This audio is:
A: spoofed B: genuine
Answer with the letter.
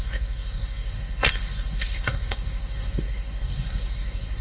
A